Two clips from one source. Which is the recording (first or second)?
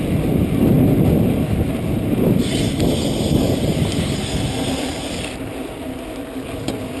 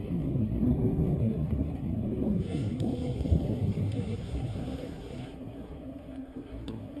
first